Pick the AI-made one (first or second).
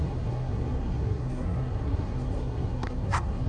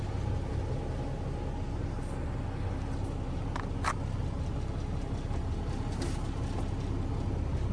first